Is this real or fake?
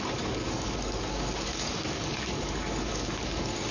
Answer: fake